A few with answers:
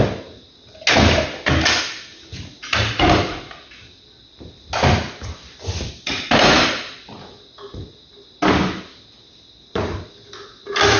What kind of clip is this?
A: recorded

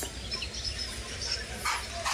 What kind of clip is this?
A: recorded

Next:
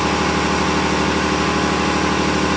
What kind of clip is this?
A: recorded